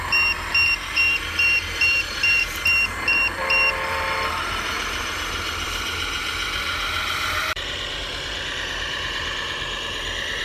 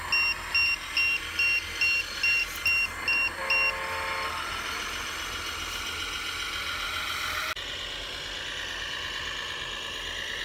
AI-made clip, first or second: first